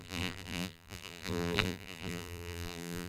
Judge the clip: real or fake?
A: fake